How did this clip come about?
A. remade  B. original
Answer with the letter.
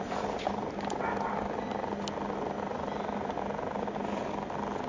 B